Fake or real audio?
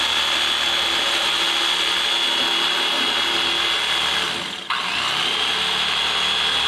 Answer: real